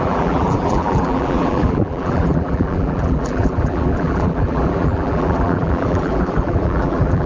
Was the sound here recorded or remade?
remade